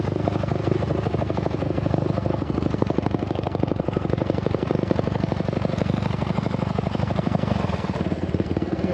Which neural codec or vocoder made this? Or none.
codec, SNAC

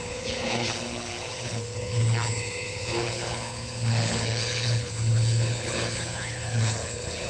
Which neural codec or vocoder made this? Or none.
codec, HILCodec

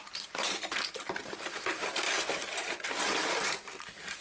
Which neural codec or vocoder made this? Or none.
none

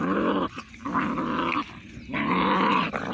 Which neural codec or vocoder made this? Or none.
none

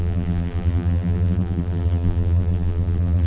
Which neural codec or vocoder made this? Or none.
vocoder, BigVGAN v2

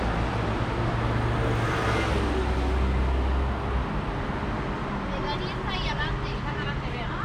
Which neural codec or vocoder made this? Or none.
none